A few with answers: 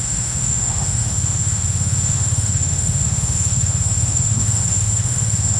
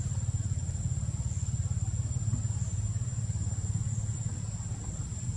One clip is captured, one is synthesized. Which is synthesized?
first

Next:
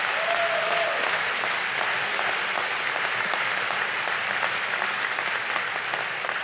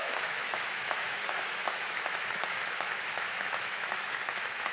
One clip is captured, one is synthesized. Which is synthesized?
second